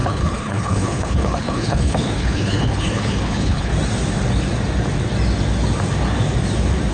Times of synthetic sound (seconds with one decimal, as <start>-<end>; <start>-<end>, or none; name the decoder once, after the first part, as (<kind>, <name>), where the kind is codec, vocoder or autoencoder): 0.0-3.7 (codec, HILCodec)